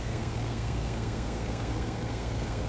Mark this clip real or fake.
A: fake